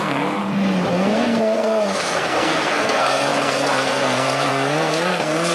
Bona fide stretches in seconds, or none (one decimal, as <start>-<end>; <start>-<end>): 0.4-0.9